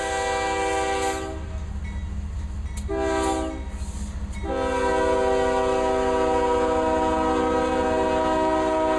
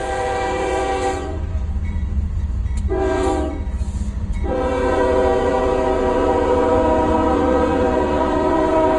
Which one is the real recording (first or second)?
first